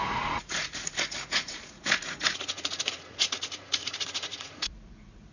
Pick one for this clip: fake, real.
fake